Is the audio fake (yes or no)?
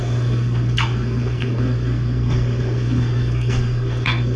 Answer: yes